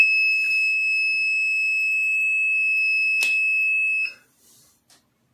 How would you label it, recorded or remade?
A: recorded